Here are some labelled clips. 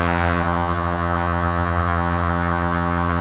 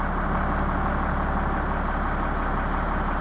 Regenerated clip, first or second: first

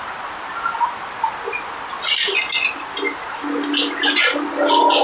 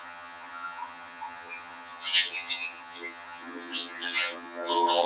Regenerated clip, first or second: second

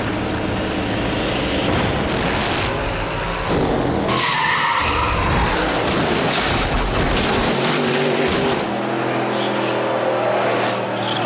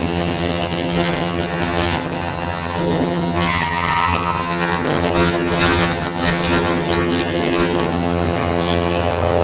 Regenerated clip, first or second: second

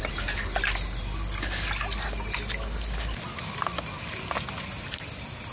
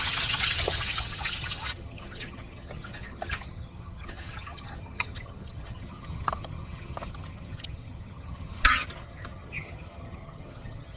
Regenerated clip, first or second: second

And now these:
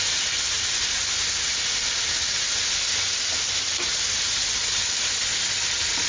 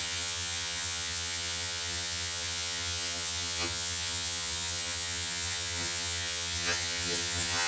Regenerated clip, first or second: second